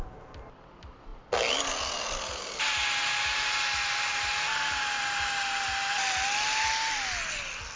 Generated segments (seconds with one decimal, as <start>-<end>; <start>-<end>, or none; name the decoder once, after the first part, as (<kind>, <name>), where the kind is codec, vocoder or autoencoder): none